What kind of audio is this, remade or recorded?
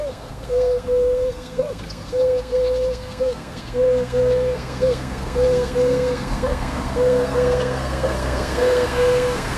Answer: remade